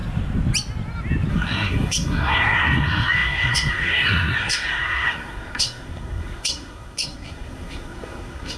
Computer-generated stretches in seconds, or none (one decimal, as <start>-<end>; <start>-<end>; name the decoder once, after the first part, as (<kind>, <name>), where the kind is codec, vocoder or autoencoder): 1.3-8.6 (codec, SNAC)